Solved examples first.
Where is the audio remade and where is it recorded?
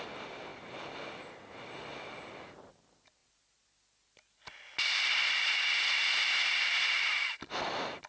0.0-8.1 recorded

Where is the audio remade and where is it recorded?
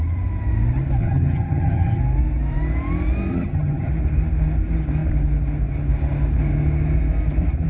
0.0-1.0 recorded; 1.0-2.0 remade; 2.0-3.3 recorded; 3.3-3.9 remade; 3.9-7.7 recorded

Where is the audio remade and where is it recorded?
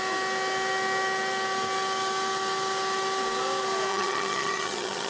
0.0-3.9 recorded; 3.9-5.1 remade